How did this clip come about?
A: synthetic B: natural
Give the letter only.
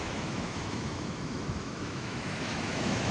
A